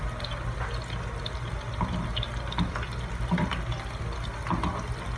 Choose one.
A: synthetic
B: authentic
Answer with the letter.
B